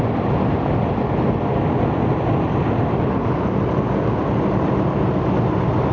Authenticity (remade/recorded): recorded